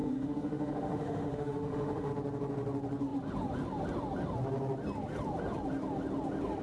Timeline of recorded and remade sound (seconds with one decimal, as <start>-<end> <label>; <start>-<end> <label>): 0.0-2.1 remade; 2.1-6.6 recorded